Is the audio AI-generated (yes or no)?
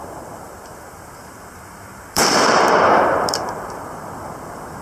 yes